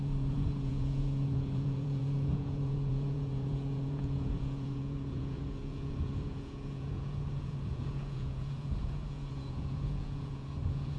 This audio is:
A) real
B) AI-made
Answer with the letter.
B